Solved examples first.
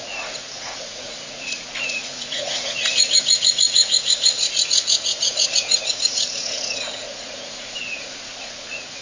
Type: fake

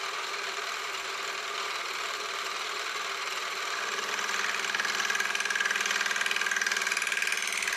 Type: real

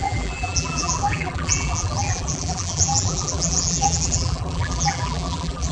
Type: fake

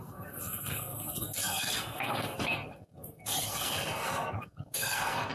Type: fake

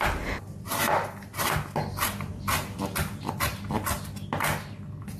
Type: real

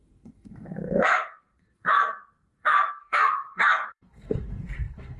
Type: fake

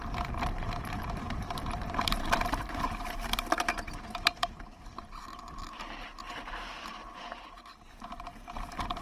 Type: fake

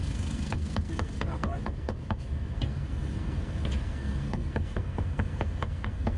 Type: fake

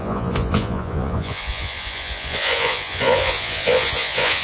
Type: fake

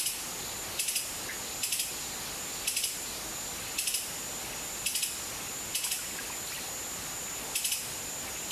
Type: real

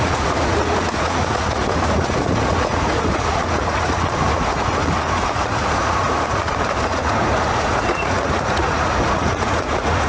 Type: fake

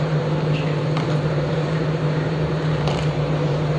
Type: fake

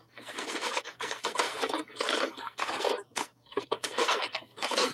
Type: fake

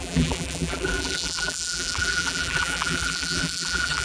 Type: fake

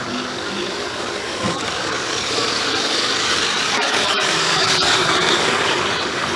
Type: fake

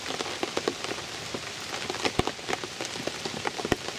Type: real